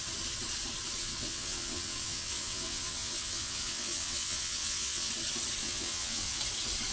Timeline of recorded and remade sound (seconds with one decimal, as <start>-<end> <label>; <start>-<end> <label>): 0.0-1.0 recorded; 1.0-5.1 remade; 5.1-5.6 recorded; 5.6-6.4 remade; 6.4-6.9 recorded